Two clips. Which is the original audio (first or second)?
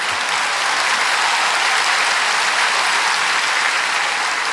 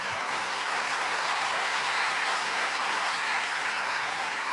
first